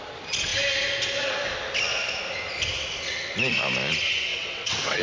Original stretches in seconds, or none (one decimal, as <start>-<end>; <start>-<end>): 0.0-4.3